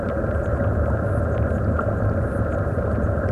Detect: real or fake real